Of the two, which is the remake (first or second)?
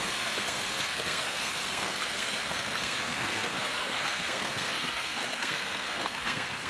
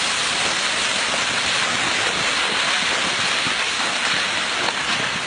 first